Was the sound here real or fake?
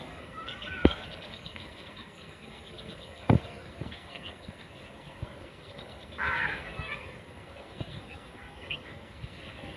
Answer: fake